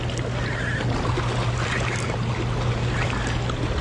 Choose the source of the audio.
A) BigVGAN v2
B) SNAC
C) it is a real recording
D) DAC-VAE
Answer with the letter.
C